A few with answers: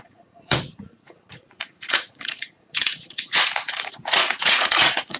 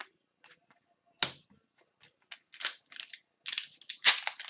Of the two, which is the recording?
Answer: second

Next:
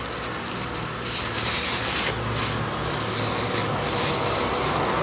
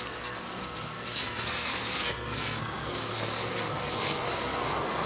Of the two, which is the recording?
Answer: first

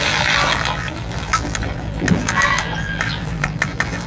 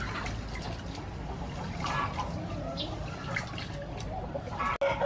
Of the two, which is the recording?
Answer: second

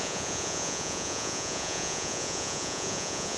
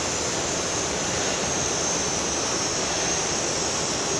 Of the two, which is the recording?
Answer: second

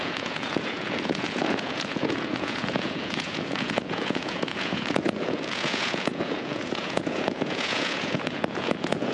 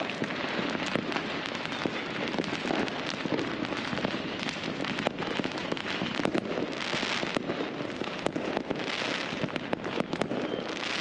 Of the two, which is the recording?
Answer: second